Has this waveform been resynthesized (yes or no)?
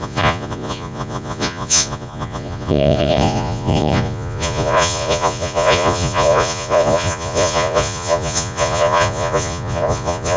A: yes